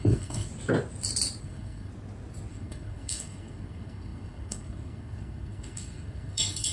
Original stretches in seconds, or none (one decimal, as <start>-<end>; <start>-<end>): 0.5-1.4; 1.9-2.5